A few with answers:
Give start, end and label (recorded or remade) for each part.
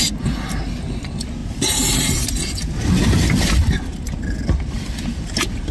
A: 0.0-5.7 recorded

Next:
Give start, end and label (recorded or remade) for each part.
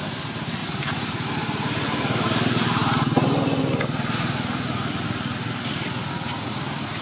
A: 0.0-0.6 recorded; 0.6-3.6 remade; 3.6-7.0 recorded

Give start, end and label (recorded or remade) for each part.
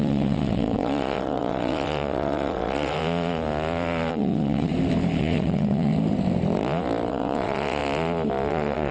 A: 0.0-3.0 remade; 3.0-4.1 recorded; 4.1-4.7 remade; 4.7-5.2 recorded; 5.2-5.9 remade; 5.9-7.1 recorded; 7.1-7.8 remade; 7.8-8.5 recorded; 8.5-8.9 remade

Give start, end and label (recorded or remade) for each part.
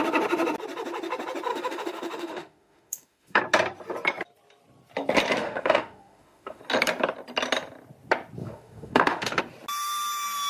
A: 0.0-1.5 recorded; 1.5-3.4 remade; 3.4-5.4 recorded; 5.4-6.6 remade; 6.6-8.4 recorded; 8.4-9.4 remade; 9.4-10.5 recorded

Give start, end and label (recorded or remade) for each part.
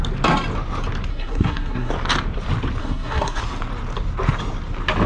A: 0.0-1.1 recorded; 1.1-1.9 remade; 1.9-2.8 recorded; 2.8-3.4 remade; 3.4-5.1 recorded